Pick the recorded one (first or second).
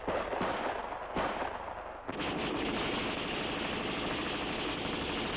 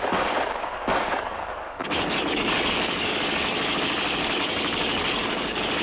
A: first